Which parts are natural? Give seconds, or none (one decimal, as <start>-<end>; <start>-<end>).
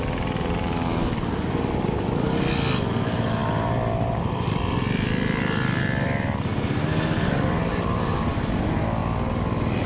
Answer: 0.0-9.9